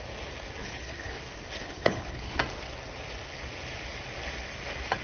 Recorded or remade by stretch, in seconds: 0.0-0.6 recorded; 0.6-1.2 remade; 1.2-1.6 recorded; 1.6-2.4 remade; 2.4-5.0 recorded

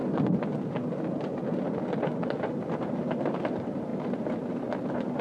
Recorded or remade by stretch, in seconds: 0.0-5.2 recorded

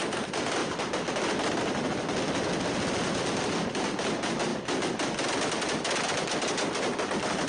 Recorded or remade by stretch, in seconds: 0.0-7.5 recorded